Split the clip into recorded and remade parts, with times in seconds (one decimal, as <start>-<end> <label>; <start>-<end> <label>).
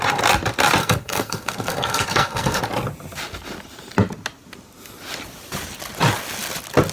0.0-0.8 recorded; 0.8-2.6 remade; 2.6-6.9 recorded